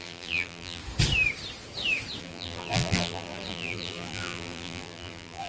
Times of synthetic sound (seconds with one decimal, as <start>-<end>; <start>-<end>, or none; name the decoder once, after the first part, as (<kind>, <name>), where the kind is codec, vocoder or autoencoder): 0.0-0.8 (vocoder, BigVGAN v2); 2.2-5.5